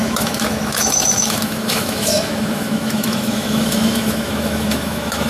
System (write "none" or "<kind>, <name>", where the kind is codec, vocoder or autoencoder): autoencoder, DAC-VAE